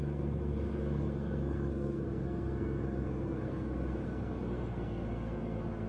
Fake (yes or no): yes